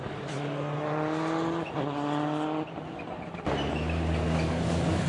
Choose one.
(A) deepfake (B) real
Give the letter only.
B